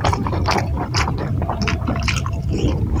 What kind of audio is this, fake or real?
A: fake